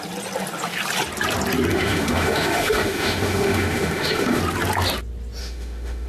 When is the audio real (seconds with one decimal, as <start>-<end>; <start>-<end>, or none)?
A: 0.0-1.7; 4.4-5.4